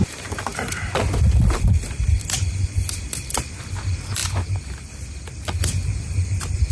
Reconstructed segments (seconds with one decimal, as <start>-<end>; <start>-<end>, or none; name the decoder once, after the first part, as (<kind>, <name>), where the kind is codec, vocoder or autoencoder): none